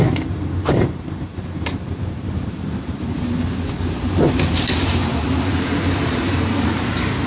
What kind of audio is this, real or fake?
fake